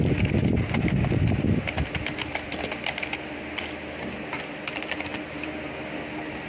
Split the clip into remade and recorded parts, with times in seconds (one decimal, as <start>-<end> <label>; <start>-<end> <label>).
0.0-6.5 recorded